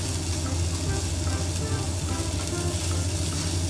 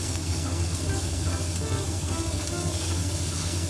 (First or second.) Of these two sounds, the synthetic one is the second